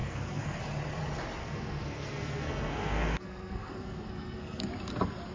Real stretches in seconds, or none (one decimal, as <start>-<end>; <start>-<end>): 0.6-1.4; 4.6-5.3